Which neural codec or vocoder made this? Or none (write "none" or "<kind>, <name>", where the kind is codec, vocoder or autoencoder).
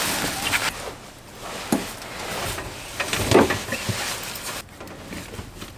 none